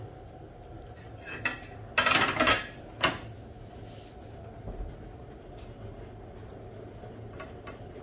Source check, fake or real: real